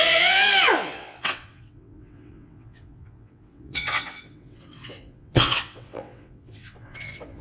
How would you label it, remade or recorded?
remade